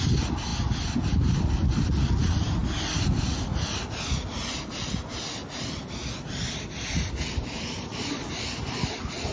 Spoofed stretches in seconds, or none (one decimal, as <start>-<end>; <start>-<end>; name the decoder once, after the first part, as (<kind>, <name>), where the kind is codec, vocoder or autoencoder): none

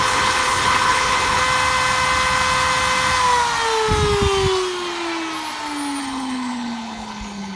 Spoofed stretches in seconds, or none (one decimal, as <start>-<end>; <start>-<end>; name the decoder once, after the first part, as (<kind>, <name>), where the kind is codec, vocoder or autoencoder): 0.0-1.4 (codec, HILCodec); 6.0-7.6

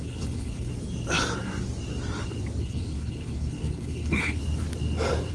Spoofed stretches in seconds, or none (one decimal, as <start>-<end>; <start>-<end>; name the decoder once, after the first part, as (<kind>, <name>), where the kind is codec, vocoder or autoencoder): 0.0-0.7 (codec, HILCodec); 2.6-4.4

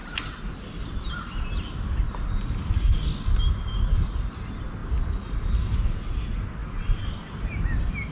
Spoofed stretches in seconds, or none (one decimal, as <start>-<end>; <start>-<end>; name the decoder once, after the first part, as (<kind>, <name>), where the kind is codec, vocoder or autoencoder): none

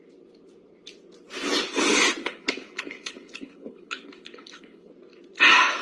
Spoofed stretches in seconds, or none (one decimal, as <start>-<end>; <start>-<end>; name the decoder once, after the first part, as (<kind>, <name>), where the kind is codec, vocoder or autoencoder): 2.2-4.9 (codec, HILCodec)

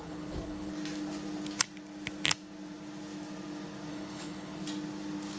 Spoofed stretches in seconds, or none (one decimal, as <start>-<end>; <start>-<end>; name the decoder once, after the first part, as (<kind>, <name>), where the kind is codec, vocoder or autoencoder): 0.0-0.7 (codec, HILCodec); 3.9-4.6